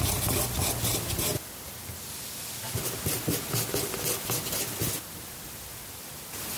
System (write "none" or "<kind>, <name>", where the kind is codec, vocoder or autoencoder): none